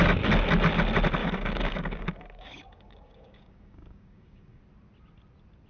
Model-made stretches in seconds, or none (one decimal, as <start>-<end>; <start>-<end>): 1.2-4.6